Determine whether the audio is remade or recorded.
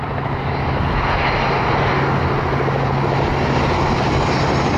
recorded